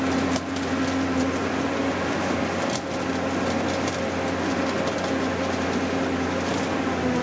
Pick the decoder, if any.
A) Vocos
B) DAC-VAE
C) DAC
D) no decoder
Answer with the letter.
D